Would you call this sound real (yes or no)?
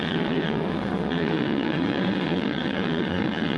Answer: no